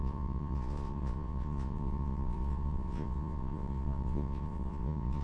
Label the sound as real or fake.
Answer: fake